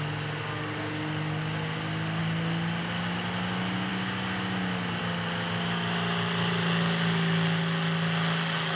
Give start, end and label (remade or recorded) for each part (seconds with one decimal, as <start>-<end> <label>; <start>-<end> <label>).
0.0-8.8 recorded